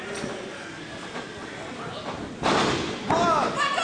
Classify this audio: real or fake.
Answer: real